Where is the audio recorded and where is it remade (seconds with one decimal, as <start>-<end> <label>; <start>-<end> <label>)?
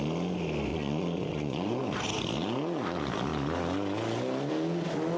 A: 0.0-0.7 recorded; 0.7-1.8 remade; 1.8-5.2 recorded